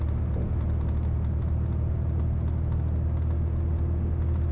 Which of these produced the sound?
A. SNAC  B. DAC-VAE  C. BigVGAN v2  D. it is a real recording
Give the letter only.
D